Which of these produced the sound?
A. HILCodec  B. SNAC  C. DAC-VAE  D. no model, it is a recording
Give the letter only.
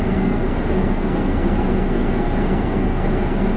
B